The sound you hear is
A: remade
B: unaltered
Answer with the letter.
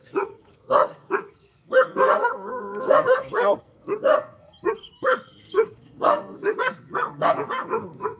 A